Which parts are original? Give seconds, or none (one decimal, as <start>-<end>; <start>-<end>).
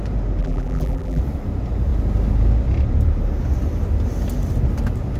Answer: 0.0-0.4; 1.2-5.2